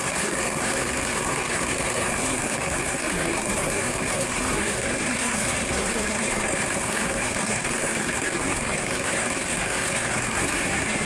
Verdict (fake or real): fake